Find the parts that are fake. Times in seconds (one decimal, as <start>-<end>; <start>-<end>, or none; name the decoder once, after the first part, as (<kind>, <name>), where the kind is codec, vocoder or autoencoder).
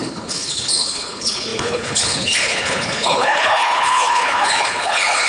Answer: 0.0-5.3 (codec, HILCodec)